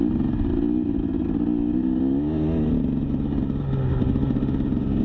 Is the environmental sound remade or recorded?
recorded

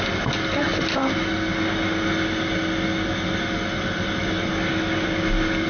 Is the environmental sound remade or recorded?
recorded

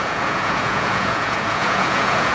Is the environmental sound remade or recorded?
remade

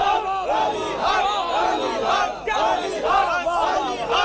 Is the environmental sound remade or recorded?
recorded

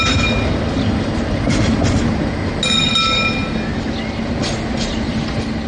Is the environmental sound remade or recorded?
recorded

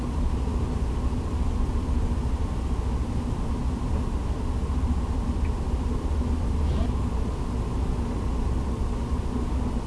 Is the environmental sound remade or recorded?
recorded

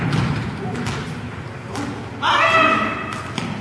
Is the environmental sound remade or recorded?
recorded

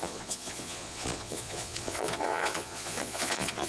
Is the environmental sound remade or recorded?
remade